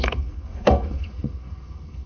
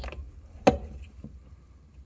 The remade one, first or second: first